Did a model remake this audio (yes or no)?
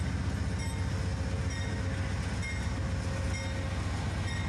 no